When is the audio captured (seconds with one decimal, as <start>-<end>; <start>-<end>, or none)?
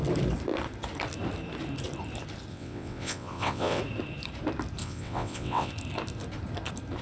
0.0-2.5; 3.8-4.8; 5.7-7.0